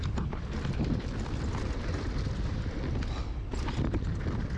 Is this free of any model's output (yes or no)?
yes